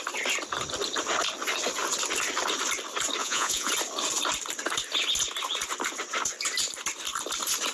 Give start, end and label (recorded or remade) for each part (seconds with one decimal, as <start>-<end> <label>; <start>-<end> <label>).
0.0-3.2 recorded; 3.2-3.7 remade; 3.7-7.7 recorded

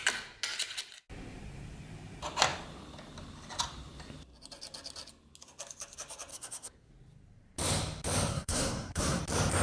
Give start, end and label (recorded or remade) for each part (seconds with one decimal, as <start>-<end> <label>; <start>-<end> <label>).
0.0-6.3 recorded; 6.3-6.9 remade; 6.9-8.3 recorded; 8.3-9.2 remade; 9.2-9.6 recorded

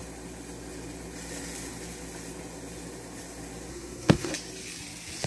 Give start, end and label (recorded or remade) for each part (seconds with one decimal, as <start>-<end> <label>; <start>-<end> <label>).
0.0-3.7 recorded; 3.7-4.3 remade; 4.3-5.3 recorded

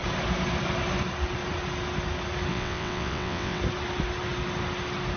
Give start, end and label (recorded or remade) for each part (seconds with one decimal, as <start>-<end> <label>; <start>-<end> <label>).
0.0-2.5 recorded; 2.5-3.6 remade; 3.6-5.2 recorded

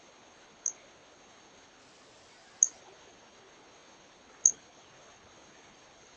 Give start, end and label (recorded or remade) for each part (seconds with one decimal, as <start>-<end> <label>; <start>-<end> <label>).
0.0-1.8 remade; 1.8-2.8 recorded; 2.8-6.2 remade

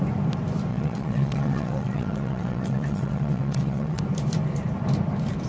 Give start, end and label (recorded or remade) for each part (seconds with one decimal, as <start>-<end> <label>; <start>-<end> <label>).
0.0-0.7 recorded; 0.7-4.0 remade; 4.0-5.5 recorded

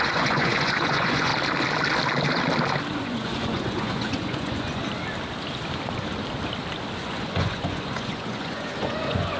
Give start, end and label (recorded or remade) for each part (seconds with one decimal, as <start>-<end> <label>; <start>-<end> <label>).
0.0-1.3 remade; 1.3-2.9 recorded; 2.9-4.8 remade; 4.8-7.0 recorded; 7.0-9.4 remade